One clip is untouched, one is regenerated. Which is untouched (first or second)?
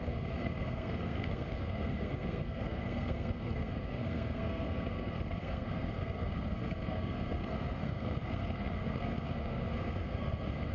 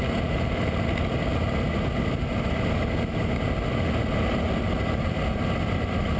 second